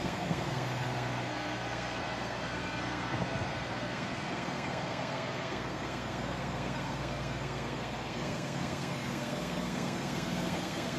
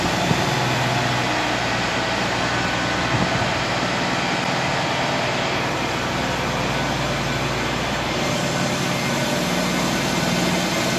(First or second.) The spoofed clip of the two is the first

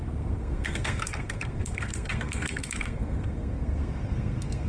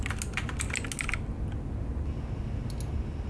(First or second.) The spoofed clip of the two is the first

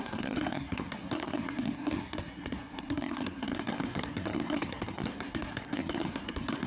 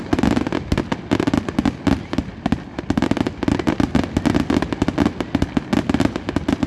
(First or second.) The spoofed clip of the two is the first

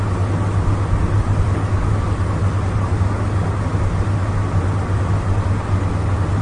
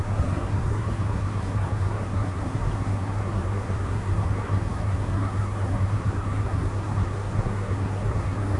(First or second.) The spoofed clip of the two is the second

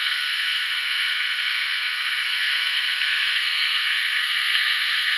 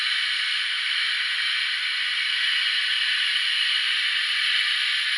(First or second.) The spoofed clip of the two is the first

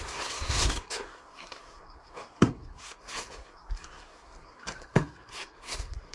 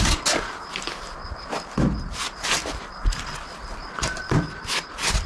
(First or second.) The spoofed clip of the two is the first